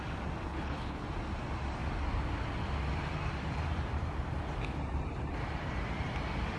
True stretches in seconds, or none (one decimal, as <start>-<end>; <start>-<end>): 0.0-0.5; 1.0-6.6